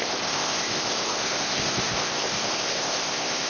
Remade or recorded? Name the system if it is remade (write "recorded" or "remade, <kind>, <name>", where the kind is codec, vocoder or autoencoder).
remade, codec, ZipCodec